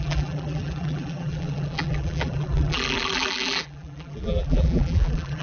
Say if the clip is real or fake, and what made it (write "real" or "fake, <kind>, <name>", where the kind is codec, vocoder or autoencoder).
fake, vocoder, BigVGAN v2